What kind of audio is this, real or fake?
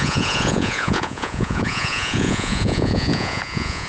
fake